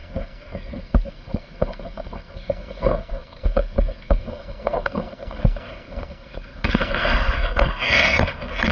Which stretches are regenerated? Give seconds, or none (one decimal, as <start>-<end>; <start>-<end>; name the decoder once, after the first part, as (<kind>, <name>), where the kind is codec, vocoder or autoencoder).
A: 0.0-8.7 (codec, SNAC)